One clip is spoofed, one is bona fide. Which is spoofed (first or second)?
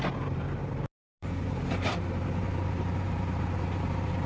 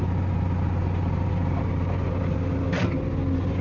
first